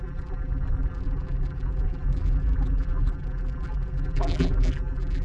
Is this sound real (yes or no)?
no